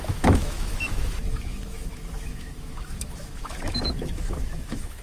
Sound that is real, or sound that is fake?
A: fake